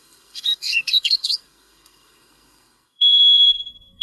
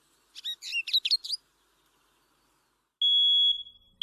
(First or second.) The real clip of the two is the second